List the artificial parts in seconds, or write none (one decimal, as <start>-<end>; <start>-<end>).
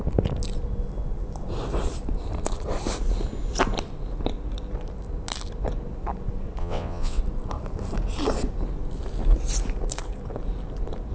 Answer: 6.6-7.2